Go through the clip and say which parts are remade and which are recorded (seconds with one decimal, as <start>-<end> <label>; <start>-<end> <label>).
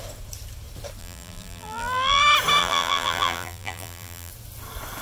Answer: 0.0-1.0 recorded; 1.0-2.2 remade; 2.2-2.6 recorded; 2.6-4.3 remade; 4.3-5.0 recorded